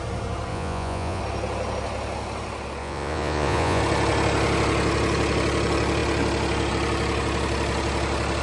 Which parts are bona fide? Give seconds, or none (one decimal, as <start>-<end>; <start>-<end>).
0.0-0.5; 1.2-2.8; 3.8-8.4